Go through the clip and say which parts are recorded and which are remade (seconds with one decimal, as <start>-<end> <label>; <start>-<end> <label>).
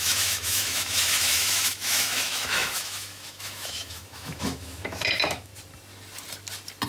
0.0-5.5 remade; 5.5-6.9 recorded